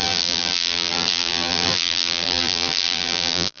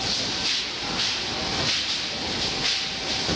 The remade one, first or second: first